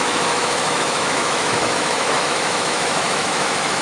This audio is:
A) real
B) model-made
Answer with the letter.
B